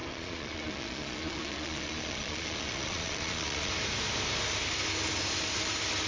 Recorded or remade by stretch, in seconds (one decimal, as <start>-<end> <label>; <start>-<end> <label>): 0.0-3.7 remade; 3.7-6.1 recorded